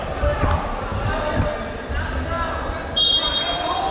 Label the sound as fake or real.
real